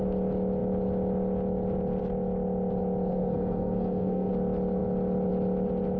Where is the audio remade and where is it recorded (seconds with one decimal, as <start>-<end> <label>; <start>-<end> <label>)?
0.0-3.1 recorded; 3.1-4.3 remade; 4.3-6.0 recorded